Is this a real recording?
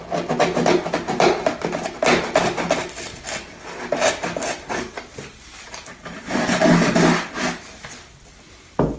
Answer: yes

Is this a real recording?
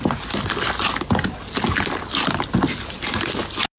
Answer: yes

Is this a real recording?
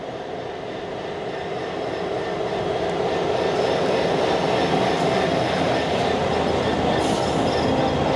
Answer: yes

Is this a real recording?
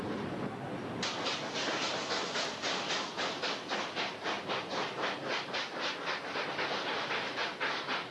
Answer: yes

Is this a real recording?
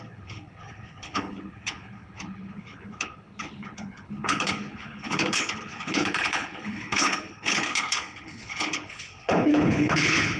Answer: no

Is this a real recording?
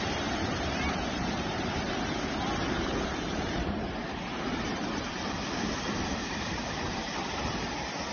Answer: no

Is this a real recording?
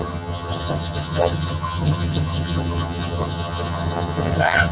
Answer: no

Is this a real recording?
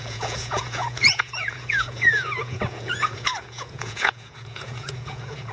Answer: no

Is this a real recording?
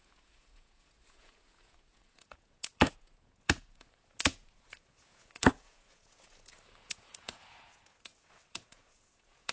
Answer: no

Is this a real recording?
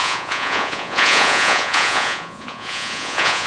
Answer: no